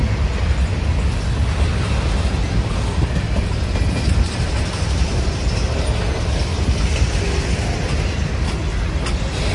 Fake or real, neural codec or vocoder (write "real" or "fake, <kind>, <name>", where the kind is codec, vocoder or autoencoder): real